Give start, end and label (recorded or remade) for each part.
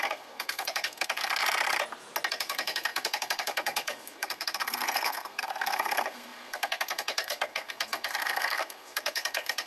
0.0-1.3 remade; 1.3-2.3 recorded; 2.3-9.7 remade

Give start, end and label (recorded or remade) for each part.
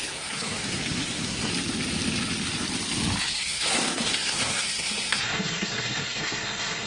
0.0-1.5 remade; 1.5-3.2 recorded; 3.2-6.9 remade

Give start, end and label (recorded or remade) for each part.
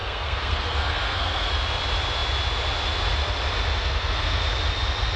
0.0-1.5 remade; 1.5-3.8 recorded; 3.8-4.4 remade; 4.4-5.2 recorded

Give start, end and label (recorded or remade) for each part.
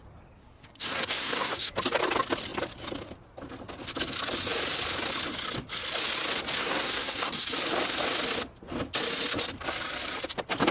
0.0-0.4 recorded; 0.4-1.7 remade; 1.7-6.6 recorded; 6.6-7.5 remade; 7.5-10.7 recorded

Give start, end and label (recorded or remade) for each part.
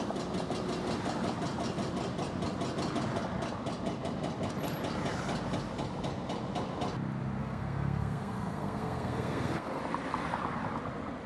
0.0-7.4 recorded; 7.4-9.8 remade; 9.8-11.3 recorded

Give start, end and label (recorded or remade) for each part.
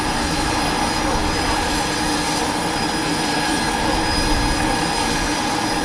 0.0-5.8 recorded